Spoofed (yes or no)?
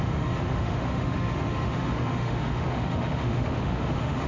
yes